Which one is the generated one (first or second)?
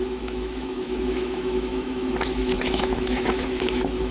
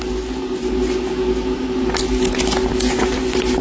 first